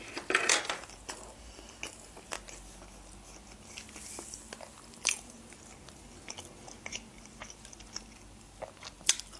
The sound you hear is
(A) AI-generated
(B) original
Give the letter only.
B